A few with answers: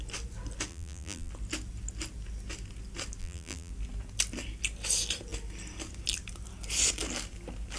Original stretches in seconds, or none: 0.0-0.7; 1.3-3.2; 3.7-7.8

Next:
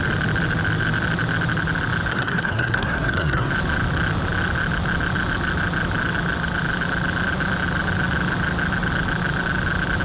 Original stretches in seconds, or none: 0.0-2.1; 3.5-10.0

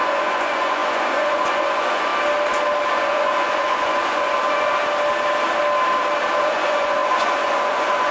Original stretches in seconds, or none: 2.1-2.9; 4.8-6.4